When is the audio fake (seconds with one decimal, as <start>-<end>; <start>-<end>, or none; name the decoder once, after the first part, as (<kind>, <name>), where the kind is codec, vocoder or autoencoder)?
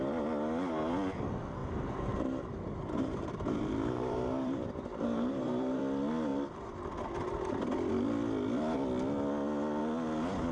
1.6-5.8 (vocoder, BigVGAN v2)